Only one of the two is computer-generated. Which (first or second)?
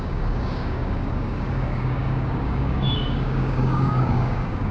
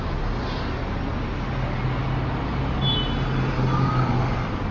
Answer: first